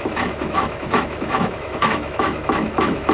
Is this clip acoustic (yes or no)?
no